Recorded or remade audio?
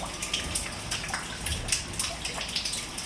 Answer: recorded